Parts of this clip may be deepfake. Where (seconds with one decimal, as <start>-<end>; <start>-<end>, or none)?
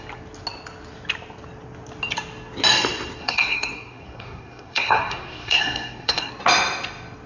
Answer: 3.2-6.3